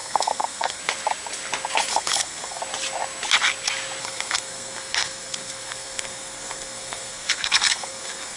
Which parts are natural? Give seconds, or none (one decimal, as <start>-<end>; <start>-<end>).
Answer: 0.8-1.9; 2.6-4.0